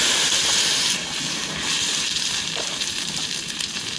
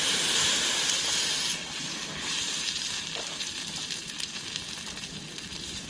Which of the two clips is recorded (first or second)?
second